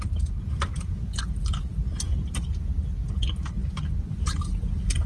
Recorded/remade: recorded